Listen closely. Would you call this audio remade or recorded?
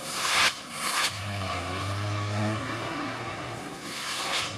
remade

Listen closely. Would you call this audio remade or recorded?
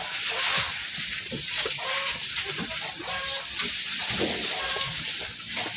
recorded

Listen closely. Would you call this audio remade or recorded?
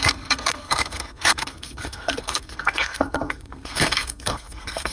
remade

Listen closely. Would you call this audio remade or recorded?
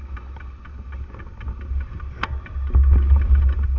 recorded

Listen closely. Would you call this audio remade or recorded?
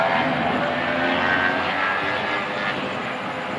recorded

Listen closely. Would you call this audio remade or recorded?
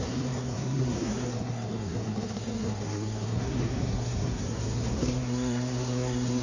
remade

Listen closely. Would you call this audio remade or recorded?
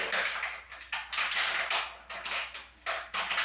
recorded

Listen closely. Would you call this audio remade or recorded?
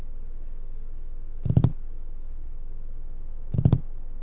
recorded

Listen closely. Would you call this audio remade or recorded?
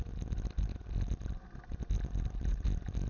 recorded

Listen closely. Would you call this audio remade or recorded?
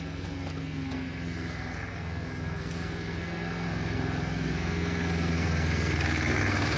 remade